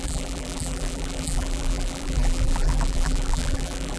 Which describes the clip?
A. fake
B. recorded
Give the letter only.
A